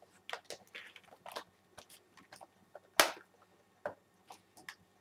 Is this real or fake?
real